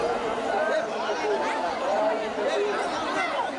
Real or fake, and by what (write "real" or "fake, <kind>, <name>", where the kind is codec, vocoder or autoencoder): real